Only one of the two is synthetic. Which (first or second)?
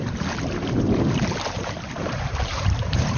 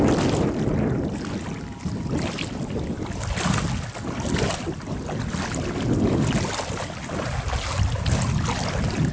first